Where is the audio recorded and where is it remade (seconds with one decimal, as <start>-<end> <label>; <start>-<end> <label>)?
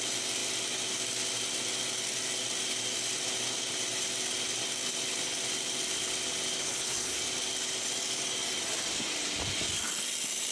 0.0-6.6 recorded; 6.6-7.2 remade; 7.2-10.5 recorded